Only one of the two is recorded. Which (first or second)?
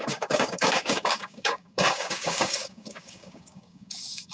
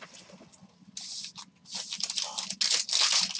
second